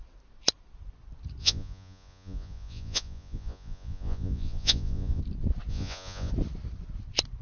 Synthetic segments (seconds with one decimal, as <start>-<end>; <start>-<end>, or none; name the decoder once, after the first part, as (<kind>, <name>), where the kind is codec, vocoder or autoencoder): 1.4-5.2 (vocoder, Vocos); 5.7-6.3